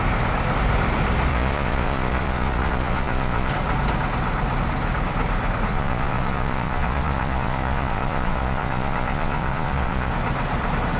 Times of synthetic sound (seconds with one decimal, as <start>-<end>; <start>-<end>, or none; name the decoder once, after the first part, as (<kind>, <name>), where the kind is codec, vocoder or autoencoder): 1.3-3.5 (vocoder, Vocos); 5.7-10.1